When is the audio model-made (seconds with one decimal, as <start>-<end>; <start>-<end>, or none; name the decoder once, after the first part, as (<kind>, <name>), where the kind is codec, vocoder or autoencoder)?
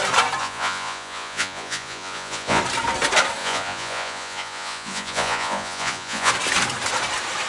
0.4-2.6 (vocoder, Vocos); 3.4-6.3